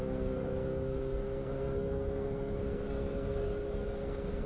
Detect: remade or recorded remade